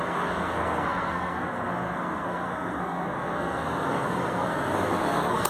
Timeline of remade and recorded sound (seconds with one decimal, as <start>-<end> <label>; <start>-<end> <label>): 0.0-5.5 remade